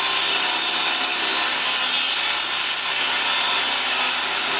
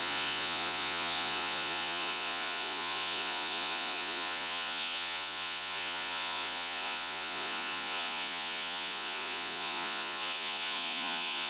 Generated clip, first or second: second